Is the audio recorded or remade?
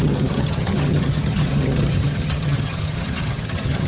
remade